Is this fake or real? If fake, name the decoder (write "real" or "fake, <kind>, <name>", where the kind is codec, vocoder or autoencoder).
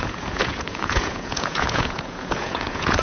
fake, vocoder, Vocos